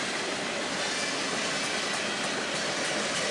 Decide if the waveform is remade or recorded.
recorded